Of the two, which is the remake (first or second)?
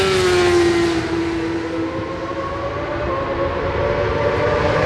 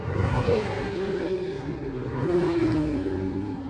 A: second